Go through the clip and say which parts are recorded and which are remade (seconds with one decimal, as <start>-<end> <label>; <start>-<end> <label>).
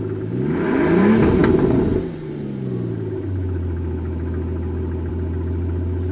0.0-6.1 recorded